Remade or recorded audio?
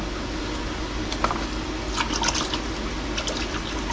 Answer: recorded